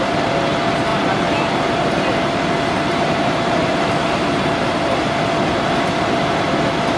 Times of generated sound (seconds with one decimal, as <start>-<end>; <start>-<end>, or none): 0.9-5.1